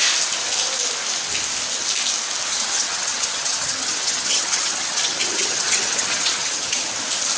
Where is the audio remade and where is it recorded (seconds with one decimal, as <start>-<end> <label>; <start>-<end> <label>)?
0.0-2.5 recorded; 2.5-6.9 remade; 6.9-7.4 recorded